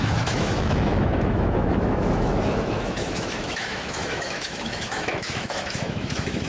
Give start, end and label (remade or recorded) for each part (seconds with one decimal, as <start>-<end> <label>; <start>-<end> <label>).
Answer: 0.0-6.5 remade